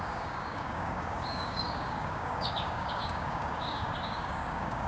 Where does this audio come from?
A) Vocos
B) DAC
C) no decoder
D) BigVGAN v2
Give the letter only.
B